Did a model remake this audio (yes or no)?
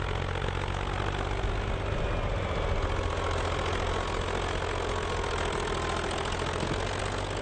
no